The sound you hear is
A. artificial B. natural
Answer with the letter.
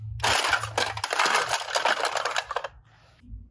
B